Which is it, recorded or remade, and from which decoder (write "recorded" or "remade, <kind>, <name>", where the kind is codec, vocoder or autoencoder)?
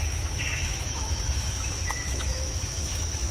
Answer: remade, autoencoder, DAC-VAE